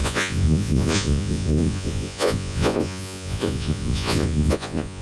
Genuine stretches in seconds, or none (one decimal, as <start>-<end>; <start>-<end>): none